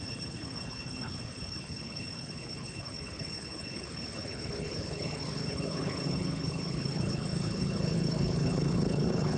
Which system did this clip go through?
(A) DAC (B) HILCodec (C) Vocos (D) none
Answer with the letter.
B